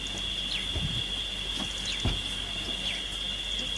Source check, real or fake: real